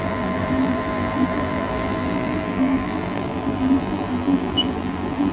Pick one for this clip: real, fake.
fake